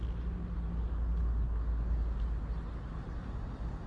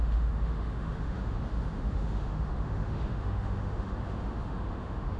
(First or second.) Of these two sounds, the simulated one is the second